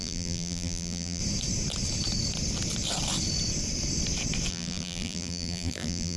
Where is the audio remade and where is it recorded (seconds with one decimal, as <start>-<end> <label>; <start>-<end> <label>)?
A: 0.0-1.2 remade; 1.2-4.5 recorded; 4.5-6.2 remade